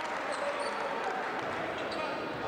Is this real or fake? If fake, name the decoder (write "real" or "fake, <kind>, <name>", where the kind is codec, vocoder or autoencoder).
real